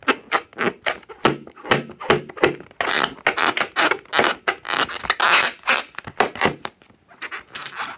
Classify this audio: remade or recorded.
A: recorded